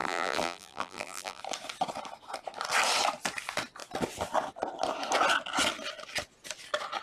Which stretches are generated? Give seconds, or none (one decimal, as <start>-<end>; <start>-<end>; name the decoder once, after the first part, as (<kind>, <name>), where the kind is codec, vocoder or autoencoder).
0.0-1.4 (vocoder, BigVGAN v2)

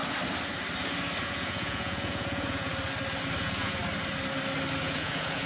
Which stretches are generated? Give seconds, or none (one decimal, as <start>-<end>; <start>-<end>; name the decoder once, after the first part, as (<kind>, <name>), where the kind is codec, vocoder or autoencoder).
1.2-2.7 (vocoder, Vocos); 3.4-3.8; 4.8-5.5

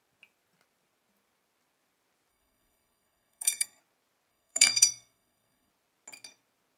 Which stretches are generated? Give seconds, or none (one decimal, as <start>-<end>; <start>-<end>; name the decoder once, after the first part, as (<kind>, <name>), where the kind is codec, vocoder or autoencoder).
2.3-3.8 (codec, SNAC); 4.3-5.7

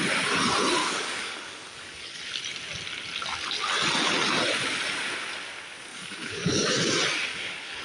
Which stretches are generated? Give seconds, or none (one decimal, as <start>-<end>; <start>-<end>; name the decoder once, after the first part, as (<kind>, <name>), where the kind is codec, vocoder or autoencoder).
0.8-2.2 (codec, DAC); 5.9-6.8; 7.3-7.8